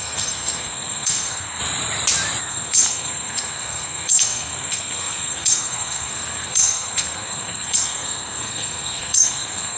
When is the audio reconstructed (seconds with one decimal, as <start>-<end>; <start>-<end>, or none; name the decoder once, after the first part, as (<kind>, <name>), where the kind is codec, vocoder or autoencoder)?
0.0-1.6 (codec, SNAC); 2.4-9.8